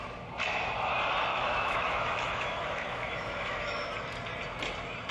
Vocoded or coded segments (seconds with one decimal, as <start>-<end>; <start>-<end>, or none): 1.3-3.9